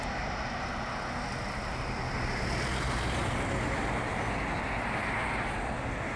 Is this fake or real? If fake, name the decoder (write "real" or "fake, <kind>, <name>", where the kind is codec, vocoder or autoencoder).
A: real